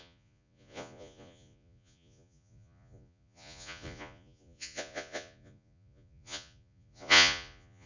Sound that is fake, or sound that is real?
fake